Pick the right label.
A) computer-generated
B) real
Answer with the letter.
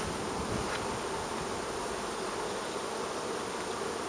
B